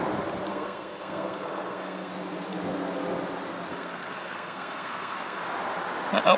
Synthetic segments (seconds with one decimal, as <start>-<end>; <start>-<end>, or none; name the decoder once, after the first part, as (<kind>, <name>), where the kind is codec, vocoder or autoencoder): 0.5-2.1 (codec, SNAC); 3.7-5.4